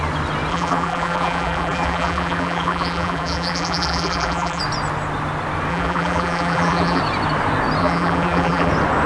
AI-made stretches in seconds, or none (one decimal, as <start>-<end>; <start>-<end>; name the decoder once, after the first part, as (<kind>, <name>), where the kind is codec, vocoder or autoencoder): 0.5-4.6 (vocoder, BigVGAN v2); 5.7-7.0; 7.8-8.7